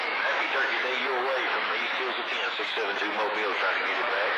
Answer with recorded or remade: remade